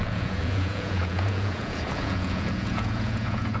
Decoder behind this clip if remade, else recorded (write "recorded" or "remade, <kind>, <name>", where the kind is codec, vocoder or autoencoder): remade, vocoder, Vocos